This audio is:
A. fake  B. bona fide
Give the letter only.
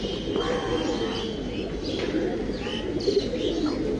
B